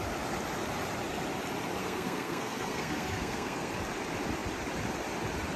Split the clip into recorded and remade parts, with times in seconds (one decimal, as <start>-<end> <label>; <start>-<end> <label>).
0.0-1.8 recorded; 1.8-3.7 remade; 3.7-5.6 recorded

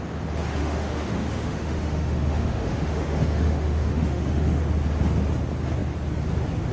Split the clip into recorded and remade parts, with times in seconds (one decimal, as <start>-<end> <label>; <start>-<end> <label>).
0.0-0.6 recorded; 0.6-4.6 remade; 4.6-6.7 recorded

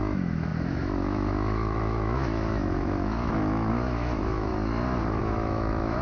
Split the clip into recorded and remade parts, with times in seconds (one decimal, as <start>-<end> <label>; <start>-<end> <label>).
0.0-4.5 remade; 4.5-5.2 recorded; 5.2-6.0 remade

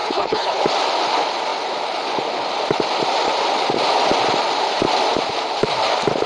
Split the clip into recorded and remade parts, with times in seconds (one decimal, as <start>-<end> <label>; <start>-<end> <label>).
0.0-0.6 remade; 0.6-6.3 recorded

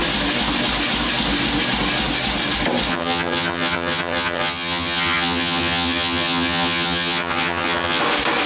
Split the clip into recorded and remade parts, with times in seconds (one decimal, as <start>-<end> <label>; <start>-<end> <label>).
0.0-2.9 recorded; 2.9-8.0 remade; 8.0-8.5 recorded

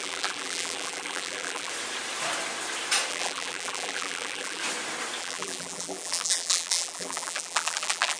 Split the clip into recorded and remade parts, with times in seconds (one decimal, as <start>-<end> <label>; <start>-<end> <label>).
0.0-1.7 remade; 1.7-3.1 recorded; 3.1-4.6 remade; 4.6-5.2 recorded; 5.2-8.2 remade